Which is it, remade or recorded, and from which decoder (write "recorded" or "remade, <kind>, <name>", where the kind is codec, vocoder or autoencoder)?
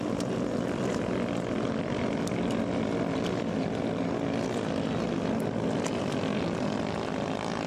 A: recorded